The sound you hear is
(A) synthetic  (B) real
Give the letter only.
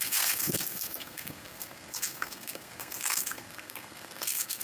A